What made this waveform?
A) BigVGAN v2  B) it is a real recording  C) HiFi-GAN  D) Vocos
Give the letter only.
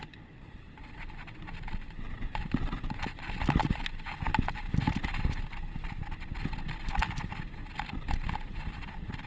B